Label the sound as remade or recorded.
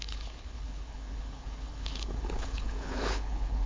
remade